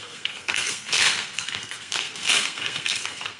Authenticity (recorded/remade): remade